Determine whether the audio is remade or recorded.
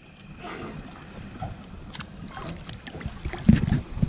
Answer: recorded